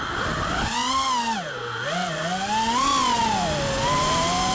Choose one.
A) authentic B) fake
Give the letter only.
A